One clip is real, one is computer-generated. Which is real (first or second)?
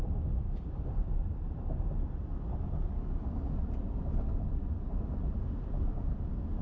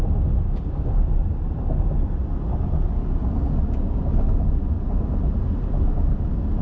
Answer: second